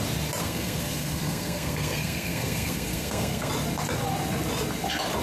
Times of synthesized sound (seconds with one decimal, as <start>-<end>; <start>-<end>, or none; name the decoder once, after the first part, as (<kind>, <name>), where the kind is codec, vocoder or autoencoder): 0.4-3.5 (codec, SNAC)